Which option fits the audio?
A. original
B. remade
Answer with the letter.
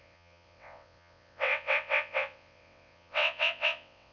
B